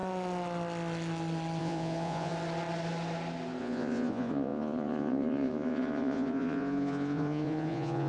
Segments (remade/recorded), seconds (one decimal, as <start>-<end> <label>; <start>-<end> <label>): 0.0-1.6 recorded; 1.6-2.3 remade; 2.3-3.6 recorded; 3.6-8.1 remade

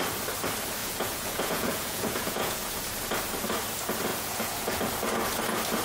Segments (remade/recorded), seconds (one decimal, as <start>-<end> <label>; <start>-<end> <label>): 0.0-0.8 recorded; 0.8-2.8 remade; 2.8-4.1 recorded; 4.1-4.8 remade; 4.8-5.8 recorded